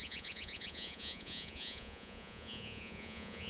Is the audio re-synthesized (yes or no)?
yes